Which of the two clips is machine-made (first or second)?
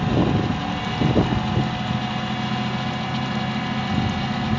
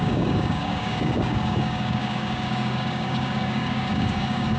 second